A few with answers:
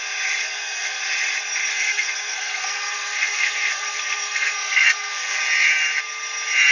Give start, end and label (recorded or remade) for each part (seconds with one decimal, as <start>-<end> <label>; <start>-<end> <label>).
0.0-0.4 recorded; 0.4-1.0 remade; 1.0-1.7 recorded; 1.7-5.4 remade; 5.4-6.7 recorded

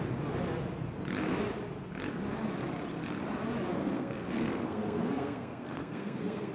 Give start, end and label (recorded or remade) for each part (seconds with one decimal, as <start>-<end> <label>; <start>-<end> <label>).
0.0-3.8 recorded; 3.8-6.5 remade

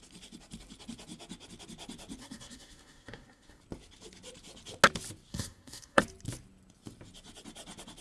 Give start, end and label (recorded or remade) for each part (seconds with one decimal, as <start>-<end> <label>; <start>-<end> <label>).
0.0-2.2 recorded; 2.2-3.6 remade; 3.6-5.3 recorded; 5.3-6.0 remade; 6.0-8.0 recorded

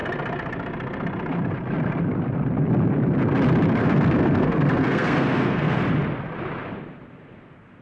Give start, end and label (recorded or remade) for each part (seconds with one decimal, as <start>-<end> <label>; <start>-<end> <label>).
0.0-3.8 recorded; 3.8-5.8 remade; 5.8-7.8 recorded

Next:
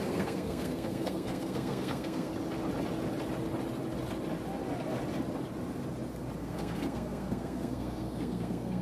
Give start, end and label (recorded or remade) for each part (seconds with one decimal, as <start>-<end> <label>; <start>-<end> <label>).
0.0-2.3 remade; 2.3-6.4 recorded; 6.4-8.8 remade